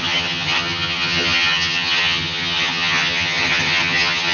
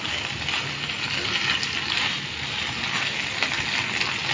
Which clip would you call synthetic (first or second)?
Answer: first